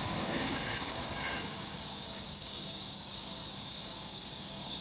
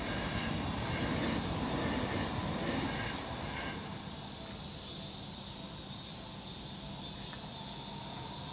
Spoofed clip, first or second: first